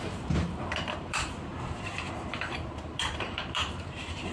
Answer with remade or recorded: remade